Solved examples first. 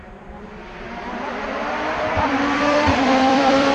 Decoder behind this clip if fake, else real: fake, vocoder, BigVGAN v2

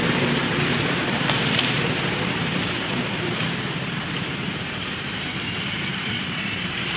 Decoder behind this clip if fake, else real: fake, vocoder, BigVGAN v2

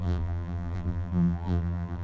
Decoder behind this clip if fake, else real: fake, vocoder, BigVGAN v2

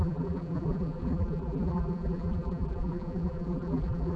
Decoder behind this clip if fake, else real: fake, vocoder, BigVGAN v2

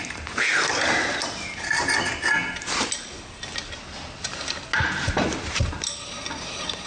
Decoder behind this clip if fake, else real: real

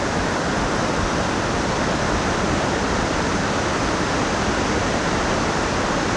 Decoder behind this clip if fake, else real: fake, vocoder, BigVGAN v2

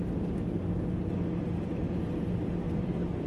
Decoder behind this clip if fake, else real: fake, vocoder, BigVGAN v2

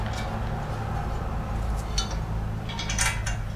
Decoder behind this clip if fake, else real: real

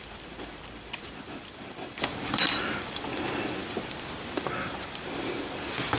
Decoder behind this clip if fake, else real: fake, vocoder, BigVGAN v2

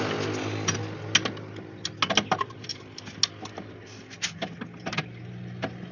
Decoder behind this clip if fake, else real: real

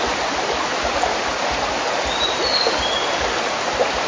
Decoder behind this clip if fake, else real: real